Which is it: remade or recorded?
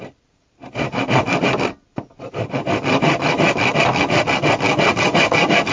recorded